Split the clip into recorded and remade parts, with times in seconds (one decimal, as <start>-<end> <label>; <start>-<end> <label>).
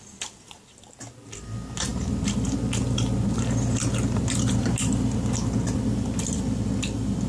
0.0-7.3 recorded